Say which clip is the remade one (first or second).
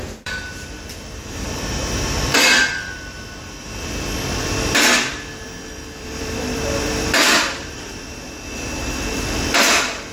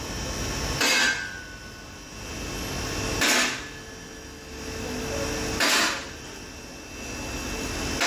first